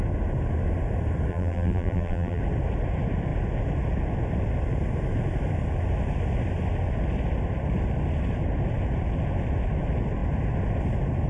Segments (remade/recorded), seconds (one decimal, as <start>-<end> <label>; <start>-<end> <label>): 0.0-1.3 recorded; 1.3-2.4 remade; 2.4-11.3 recorded